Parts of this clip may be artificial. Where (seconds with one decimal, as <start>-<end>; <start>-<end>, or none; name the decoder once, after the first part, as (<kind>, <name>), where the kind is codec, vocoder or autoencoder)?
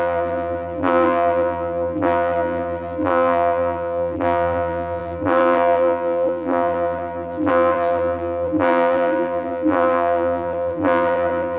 0.0-11.6 (vocoder, BigVGAN v2)